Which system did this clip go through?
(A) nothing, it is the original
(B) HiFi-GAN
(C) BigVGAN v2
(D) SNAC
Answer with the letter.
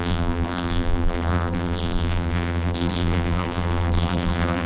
C